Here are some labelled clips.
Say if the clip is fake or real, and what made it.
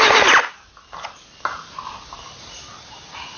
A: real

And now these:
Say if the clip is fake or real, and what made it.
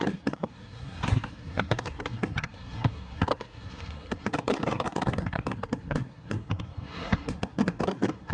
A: fake, codec, SNAC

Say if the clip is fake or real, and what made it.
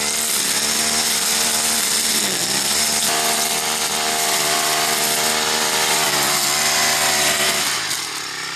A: real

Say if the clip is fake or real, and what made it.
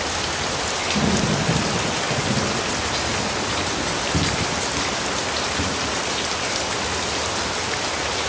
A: real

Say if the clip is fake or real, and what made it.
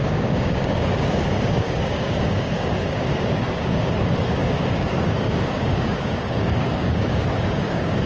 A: fake, codec, DAC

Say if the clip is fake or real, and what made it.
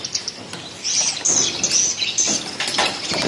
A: real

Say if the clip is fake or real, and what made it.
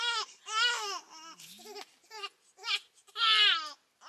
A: real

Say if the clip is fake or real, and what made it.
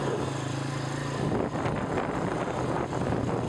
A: real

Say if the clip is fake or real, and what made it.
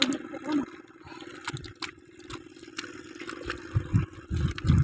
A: real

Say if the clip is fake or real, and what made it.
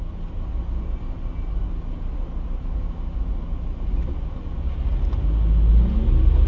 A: real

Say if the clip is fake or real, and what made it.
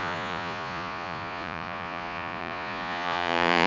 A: fake, vocoder, Vocos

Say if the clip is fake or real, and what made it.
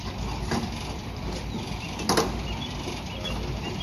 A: real